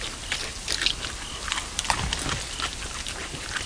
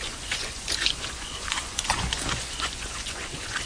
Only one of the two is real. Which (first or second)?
first